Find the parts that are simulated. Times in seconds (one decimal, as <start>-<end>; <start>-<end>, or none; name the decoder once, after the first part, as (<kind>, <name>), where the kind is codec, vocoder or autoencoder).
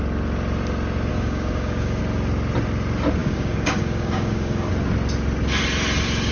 1.1-2.0 (codec, DAC); 3.2-4.7